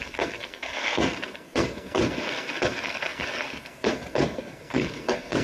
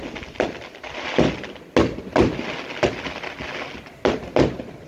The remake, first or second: first